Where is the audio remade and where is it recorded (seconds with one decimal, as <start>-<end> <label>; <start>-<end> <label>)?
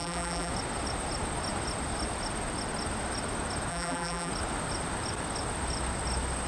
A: 0.0-0.5 remade; 0.5-3.7 recorded; 3.7-4.3 remade; 4.3-6.5 recorded